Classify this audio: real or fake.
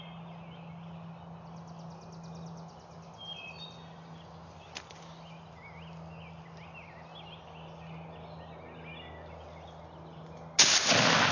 real